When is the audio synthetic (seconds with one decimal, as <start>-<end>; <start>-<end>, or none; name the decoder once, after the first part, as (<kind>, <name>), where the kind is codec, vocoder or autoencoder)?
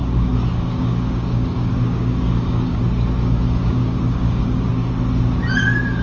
0.0-2.8 (codec, DAC); 3.2-4.7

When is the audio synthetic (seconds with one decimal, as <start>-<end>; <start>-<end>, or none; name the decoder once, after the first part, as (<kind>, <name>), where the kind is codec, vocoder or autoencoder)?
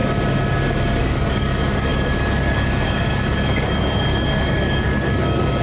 1.0-5.6 (codec, DAC)